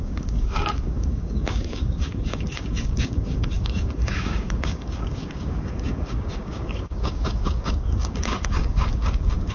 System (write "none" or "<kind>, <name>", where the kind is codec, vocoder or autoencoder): codec, DAC